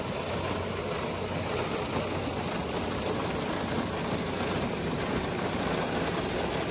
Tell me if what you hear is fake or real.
real